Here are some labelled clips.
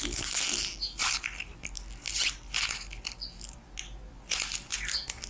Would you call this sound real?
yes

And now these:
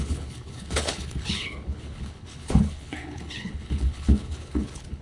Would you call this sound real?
no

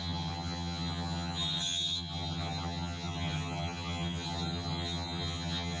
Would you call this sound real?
no